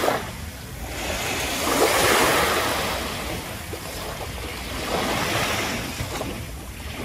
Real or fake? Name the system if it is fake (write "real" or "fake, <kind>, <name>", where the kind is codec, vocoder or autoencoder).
real